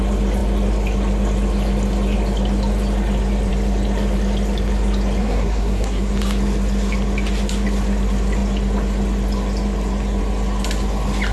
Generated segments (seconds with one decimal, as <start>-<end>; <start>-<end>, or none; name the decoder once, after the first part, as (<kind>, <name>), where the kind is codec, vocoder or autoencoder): 5.2-6.1 (codec, SNAC)